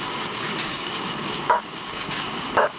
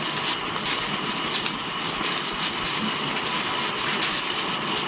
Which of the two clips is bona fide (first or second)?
second